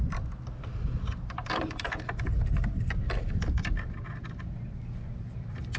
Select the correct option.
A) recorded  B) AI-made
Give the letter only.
A